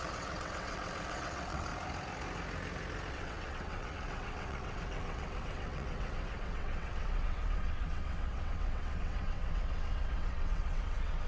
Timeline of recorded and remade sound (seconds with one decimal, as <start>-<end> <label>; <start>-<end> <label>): 0.0-1.7 remade; 1.7-3.1 recorded; 3.1-11.3 remade